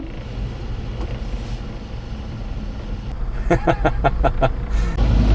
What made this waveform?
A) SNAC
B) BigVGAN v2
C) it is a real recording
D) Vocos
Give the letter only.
C